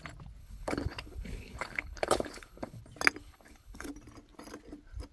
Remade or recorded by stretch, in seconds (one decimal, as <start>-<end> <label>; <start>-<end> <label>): 0.0-0.4 recorded; 0.4-2.8 remade; 2.8-3.2 recorded; 3.2-3.9 remade; 3.9-5.1 recorded